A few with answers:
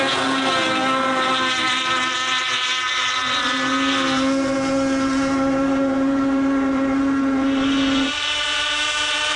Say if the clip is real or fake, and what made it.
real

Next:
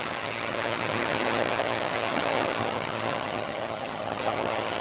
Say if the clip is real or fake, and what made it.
fake, vocoder, HiFi-GAN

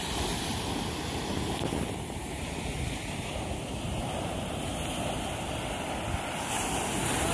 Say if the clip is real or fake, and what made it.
real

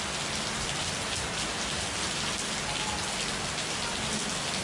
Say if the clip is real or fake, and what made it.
real